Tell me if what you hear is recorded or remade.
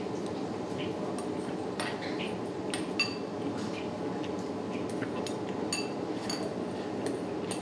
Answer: recorded